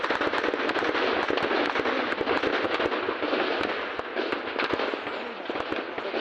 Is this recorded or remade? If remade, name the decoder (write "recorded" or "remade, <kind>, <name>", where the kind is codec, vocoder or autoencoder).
recorded